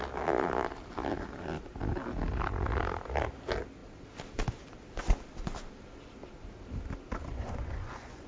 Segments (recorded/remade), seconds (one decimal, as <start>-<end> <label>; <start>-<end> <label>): 0.0-7.3 recorded; 7.3-8.3 remade